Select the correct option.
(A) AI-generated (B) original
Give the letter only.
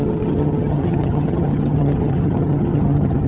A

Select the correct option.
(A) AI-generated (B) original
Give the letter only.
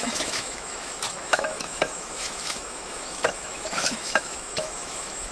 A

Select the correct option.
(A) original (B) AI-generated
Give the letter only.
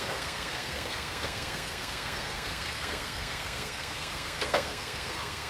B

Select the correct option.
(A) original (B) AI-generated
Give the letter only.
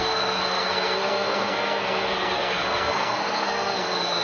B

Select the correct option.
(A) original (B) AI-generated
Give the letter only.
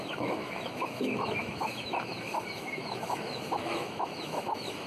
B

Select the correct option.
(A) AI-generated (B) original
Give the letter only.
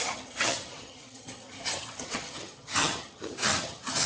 A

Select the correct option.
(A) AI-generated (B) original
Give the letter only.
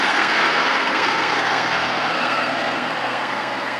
A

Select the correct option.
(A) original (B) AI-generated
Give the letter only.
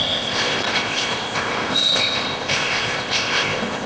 B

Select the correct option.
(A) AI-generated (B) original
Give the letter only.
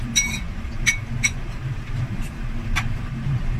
A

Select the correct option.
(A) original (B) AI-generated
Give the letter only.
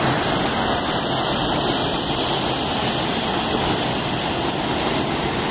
A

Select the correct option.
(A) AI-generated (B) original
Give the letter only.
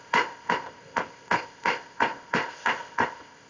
A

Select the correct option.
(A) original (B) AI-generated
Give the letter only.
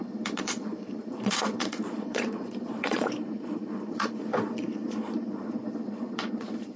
B